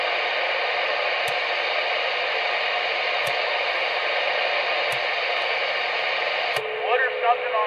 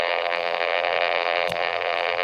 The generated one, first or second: second